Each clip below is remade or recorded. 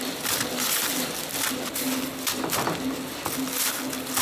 recorded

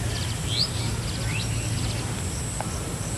recorded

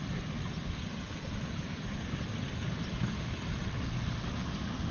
recorded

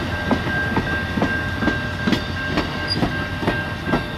recorded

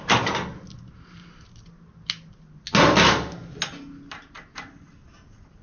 recorded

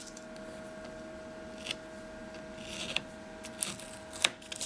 recorded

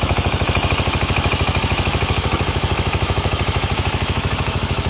remade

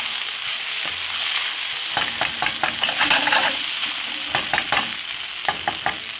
recorded